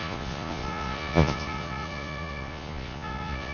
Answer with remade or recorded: remade